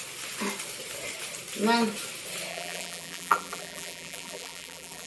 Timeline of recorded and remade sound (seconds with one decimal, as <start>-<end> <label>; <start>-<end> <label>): 0.0-2.5 recorded; 2.5-5.1 remade